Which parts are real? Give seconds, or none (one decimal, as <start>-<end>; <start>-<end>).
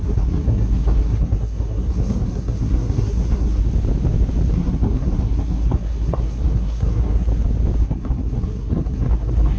3.6-4.5; 7.3-7.8